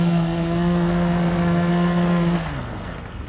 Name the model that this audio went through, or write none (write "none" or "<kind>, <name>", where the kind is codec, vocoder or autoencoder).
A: codec, SNAC